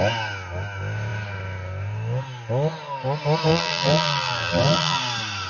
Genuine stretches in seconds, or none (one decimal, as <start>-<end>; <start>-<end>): 0.0-3.5; 5.0-5.5